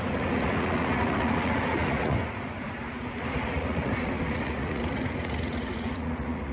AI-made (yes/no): yes